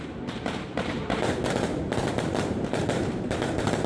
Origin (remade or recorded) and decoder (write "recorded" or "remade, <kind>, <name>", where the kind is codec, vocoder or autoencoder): remade, vocoder, BigVGAN v2